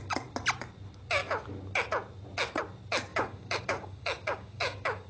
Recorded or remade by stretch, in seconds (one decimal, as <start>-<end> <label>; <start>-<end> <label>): 0.0-3.1 recorded; 3.1-5.1 remade